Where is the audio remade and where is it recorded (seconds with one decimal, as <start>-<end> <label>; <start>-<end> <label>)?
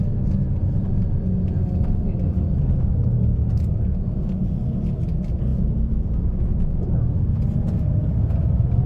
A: 0.0-8.9 recorded